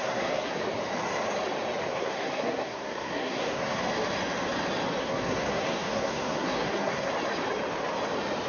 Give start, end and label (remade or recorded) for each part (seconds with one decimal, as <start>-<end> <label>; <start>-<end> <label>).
0.0-0.6 remade; 0.6-1.9 recorded; 1.9-3.8 remade; 3.8-5.0 recorded; 5.0-7.1 remade; 7.1-8.5 recorded